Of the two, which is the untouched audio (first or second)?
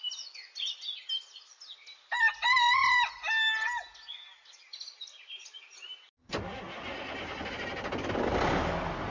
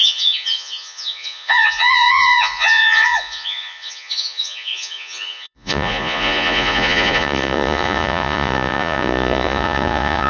first